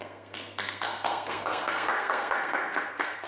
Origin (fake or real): fake